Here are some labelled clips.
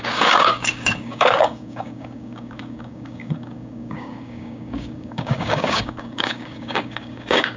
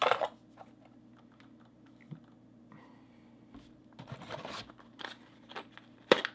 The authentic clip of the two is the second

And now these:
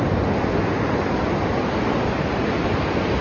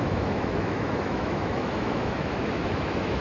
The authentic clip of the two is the first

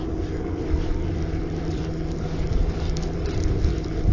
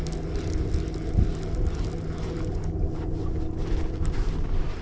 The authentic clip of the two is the second